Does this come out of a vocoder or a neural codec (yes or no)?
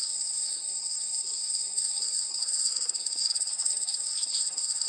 yes